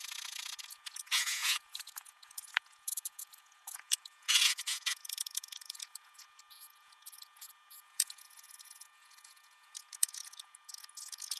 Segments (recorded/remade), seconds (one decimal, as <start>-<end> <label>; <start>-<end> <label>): 0.0-11.4 remade